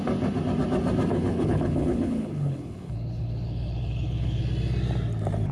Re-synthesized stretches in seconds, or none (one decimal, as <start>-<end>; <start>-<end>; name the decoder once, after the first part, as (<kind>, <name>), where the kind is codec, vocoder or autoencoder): 1.1-4.4 (codec, HILCodec)